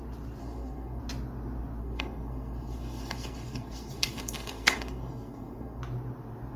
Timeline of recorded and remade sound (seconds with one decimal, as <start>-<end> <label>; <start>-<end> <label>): 0.0-0.4 recorded; 0.4-1.0 remade; 1.0-1.8 recorded; 1.8-5.8 remade; 5.8-6.6 recorded